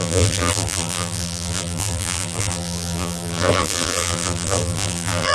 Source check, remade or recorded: remade